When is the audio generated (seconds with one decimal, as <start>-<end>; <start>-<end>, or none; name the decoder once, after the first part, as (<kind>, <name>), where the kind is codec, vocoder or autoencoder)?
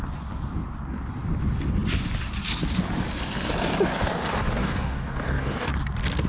4.6-5.7 (codec, DAC)